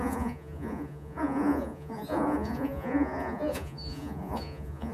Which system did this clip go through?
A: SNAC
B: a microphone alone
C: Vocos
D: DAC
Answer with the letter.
C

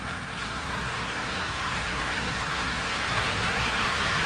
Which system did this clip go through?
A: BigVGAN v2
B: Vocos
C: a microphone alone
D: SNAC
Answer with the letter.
D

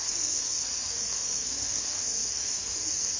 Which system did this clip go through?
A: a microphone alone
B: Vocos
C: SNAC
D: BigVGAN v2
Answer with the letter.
C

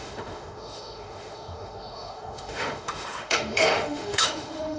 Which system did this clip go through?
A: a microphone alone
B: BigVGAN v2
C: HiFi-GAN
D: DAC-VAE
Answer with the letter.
D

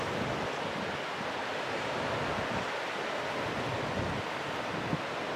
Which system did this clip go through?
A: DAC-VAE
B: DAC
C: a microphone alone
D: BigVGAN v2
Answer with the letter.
C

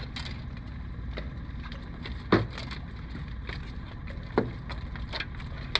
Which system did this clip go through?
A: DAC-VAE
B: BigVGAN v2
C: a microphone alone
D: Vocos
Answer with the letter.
C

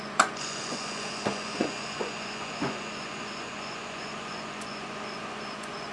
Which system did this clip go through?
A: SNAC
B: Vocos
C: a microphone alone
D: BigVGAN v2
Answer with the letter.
B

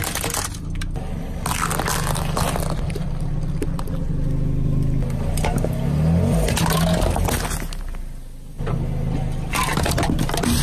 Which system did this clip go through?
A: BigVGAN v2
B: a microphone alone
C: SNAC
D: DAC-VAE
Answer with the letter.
B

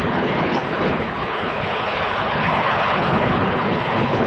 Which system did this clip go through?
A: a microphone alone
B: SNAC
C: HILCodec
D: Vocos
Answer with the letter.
C